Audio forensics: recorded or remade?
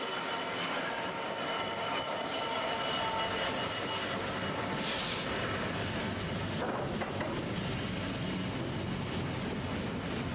recorded